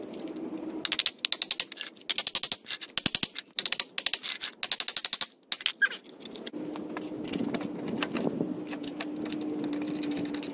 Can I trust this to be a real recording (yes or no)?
yes